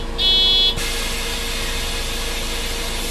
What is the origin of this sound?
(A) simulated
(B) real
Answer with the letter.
B